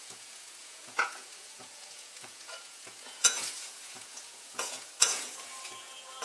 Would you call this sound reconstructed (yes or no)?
yes